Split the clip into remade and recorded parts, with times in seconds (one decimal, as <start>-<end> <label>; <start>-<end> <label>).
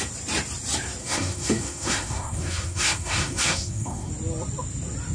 0.0-1.0 recorded; 1.0-4.1 remade; 4.1-5.1 recorded